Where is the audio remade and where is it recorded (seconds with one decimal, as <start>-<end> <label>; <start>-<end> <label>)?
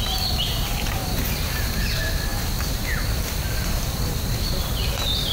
0.0-1.0 recorded; 1.0-1.7 remade; 1.7-5.3 recorded